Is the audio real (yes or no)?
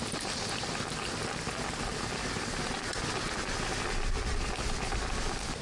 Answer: yes